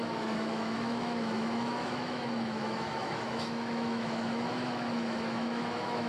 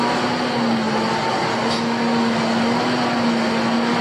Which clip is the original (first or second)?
second